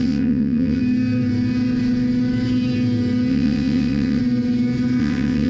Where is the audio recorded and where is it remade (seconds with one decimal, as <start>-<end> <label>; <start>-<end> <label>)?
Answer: 0.0-0.8 remade; 0.8-3.3 recorded; 3.3-4.2 remade; 4.2-5.0 recorded; 5.0-5.5 remade